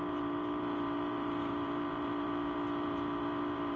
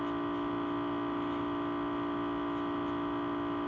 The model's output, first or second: first